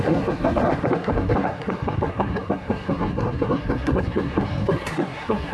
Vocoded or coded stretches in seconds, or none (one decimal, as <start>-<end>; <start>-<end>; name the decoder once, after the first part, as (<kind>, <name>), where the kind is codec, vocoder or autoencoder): 0.0-5.5 (codec, SNAC)